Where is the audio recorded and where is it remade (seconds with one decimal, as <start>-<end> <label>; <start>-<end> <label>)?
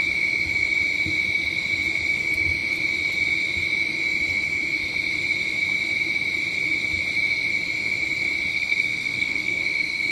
0.0-8.5 recorded; 8.5-10.1 remade